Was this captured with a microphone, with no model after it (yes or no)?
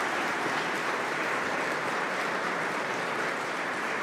no